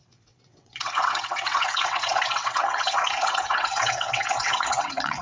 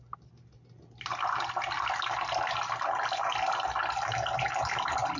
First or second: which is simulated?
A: first